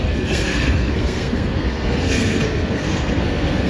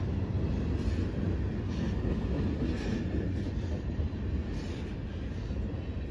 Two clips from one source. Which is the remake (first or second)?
first